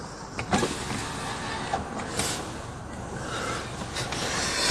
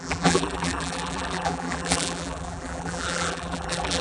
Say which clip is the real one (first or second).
first